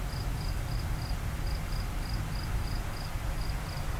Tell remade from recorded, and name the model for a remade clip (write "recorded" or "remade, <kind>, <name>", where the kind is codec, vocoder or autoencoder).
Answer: recorded